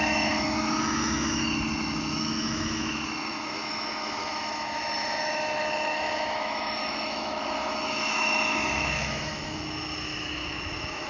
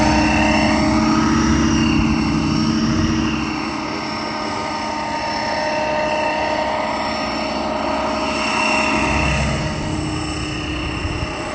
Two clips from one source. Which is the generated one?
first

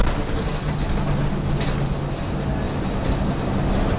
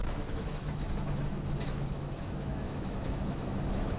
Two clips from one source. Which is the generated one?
second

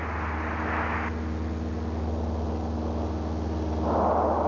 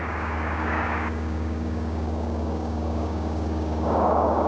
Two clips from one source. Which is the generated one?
second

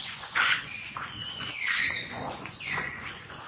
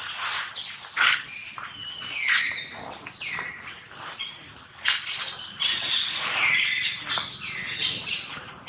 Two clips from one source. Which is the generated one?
first